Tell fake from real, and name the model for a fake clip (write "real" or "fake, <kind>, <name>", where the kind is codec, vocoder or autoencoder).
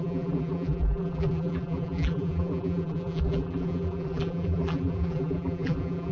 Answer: fake, vocoder, BigVGAN v2